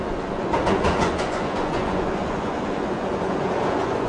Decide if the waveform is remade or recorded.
remade